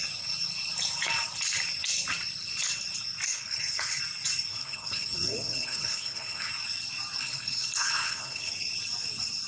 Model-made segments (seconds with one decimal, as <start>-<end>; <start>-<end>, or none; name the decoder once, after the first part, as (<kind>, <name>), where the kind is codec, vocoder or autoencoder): 3.3-4.0 (codec, HILCodec); 4.5-6.5; 7.2-8.5